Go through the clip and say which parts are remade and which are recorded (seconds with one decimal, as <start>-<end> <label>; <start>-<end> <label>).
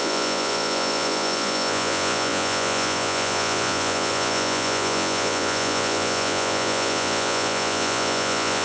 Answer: 0.0-8.6 remade